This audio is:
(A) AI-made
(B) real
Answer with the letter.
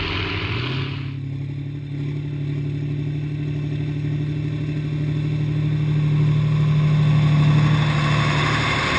B